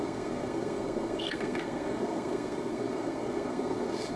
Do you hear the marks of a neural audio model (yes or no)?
yes